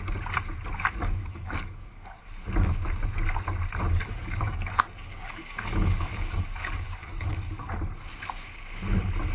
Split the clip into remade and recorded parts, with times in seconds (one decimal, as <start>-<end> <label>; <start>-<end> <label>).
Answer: 0.0-1.2 recorded; 1.2-2.2 remade; 2.2-4.0 recorded; 4.0-7.5 remade; 7.5-9.3 recorded